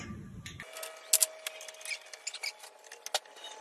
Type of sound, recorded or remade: recorded